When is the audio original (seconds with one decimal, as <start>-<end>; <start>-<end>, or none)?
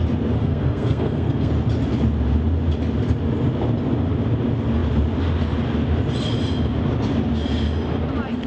0.0-0.4; 1.5-8.5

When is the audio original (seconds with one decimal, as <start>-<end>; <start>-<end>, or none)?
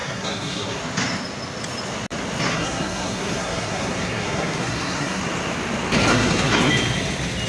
0.8-2.5; 5.2-6.1; 6.7-7.5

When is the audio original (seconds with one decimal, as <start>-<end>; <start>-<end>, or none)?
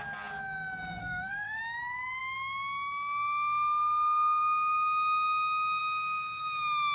0.0-1.0; 1.6-6.9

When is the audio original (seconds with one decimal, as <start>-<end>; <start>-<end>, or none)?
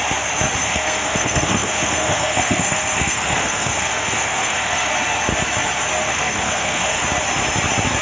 0.0-0.6; 4.9-6.1; 7.0-8.0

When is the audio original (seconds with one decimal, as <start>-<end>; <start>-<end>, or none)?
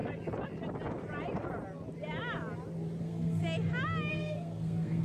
0.0-3.0; 3.4-4.1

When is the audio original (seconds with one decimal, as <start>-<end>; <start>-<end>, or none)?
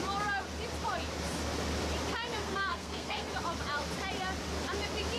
0.0-2.4; 3.3-5.2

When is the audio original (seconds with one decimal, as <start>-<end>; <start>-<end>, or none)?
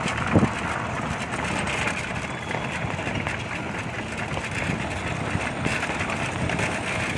0.0-7.2